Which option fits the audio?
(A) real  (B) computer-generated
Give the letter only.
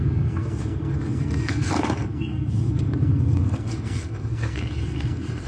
B